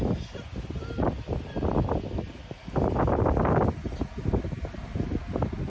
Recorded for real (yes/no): yes